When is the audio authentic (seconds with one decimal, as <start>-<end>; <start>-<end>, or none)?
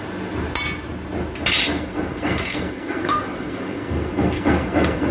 0.0-1.7